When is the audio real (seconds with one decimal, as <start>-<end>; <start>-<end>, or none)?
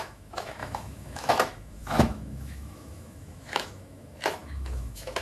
none